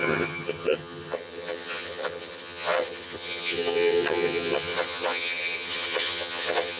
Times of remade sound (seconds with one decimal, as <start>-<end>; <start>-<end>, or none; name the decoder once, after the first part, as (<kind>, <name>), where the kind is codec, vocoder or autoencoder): 0.0-6.8 (vocoder, HiFi-GAN)